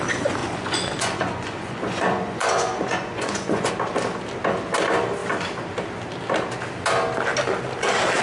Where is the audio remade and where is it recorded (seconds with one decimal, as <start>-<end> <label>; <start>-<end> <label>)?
0.0-0.4 recorded; 0.4-3.7 remade; 3.7-8.2 recorded